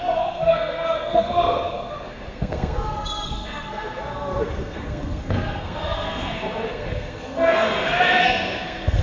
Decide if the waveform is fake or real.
fake